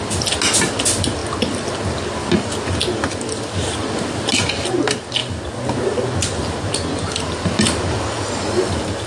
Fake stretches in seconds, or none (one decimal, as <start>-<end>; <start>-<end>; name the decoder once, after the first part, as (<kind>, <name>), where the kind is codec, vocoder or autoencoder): none